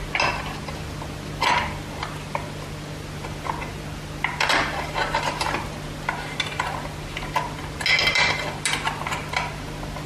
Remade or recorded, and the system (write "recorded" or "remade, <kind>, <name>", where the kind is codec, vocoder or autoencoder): recorded